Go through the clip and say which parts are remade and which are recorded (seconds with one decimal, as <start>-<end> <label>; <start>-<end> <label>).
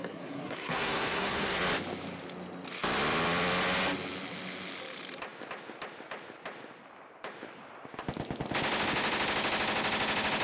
0.0-1.6 remade; 1.6-10.4 recorded